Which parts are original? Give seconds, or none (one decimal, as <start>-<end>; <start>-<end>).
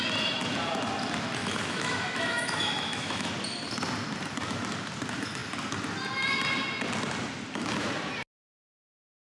0.0-1.4; 3.3-9.3